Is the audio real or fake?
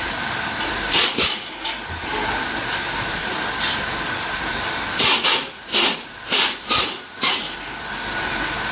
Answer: fake